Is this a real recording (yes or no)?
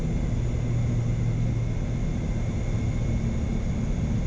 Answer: yes